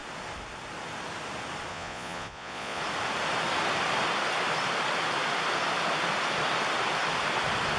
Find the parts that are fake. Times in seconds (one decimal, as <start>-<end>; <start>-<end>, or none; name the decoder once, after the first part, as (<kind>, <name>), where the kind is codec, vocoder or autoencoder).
1.7-2.8 (vocoder, Vocos)